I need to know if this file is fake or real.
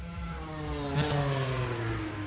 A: real